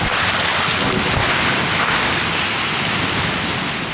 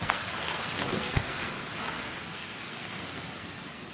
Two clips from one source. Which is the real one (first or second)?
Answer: first